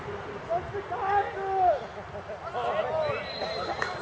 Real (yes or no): yes